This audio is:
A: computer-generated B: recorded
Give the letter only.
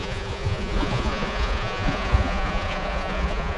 A